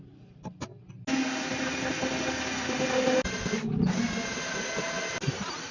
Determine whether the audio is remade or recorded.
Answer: recorded